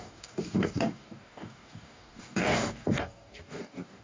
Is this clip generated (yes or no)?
yes